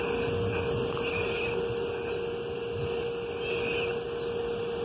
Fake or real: real